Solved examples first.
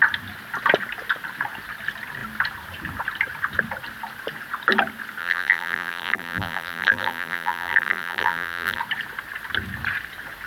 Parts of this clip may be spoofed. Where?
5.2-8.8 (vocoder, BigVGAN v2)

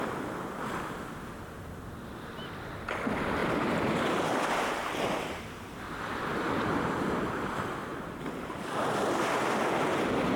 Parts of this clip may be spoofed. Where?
3.4-5.4 (vocoder, BigVGAN v2); 7.9-8.6

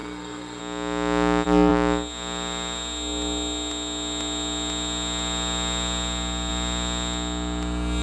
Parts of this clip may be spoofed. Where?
0.0-0.6 (codec, SNAC)

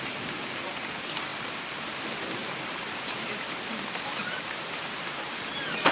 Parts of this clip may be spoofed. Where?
2.4-5.9 (vocoder, BigVGAN v2)